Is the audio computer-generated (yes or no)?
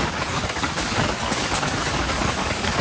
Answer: yes